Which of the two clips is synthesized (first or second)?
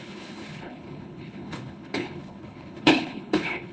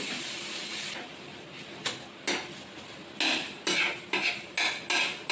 first